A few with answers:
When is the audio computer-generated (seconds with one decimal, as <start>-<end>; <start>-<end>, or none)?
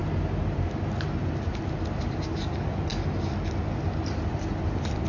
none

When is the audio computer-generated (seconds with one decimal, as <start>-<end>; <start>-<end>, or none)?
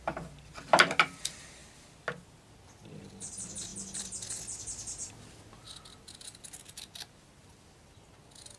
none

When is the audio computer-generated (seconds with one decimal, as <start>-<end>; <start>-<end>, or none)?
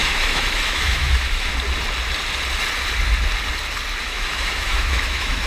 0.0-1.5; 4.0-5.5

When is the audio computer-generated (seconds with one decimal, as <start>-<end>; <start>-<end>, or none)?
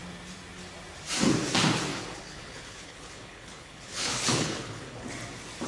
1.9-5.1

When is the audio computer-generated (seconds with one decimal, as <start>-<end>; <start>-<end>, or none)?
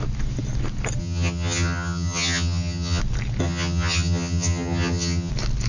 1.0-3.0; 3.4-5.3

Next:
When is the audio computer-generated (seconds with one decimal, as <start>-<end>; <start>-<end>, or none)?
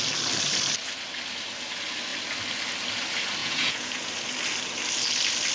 3.4-4.1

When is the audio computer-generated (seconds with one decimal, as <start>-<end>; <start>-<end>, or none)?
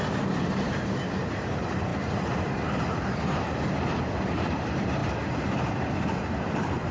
0.0-6.9